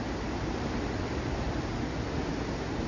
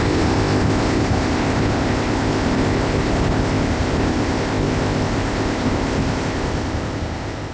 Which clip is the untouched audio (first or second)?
first